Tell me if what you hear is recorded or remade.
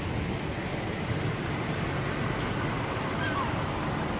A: recorded